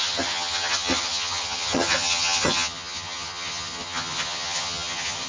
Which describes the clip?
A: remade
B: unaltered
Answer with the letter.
A